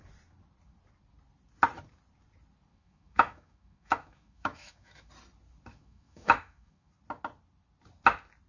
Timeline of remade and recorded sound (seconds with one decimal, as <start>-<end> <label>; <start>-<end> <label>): 0.0-2.7 recorded; 2.7-5.1 remade; 5.1-5.7 recorded; 5.7-6.9 remade; 6.9-8.5 recorded